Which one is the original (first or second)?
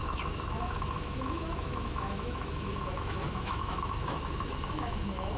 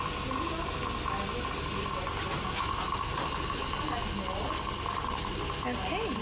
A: second